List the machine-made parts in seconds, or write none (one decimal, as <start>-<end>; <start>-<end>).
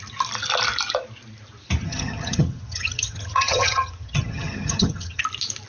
1.8-5.2